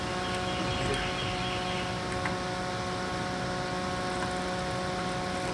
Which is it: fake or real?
real